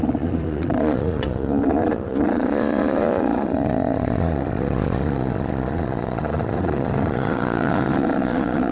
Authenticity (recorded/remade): remade